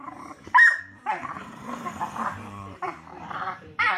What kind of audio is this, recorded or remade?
remade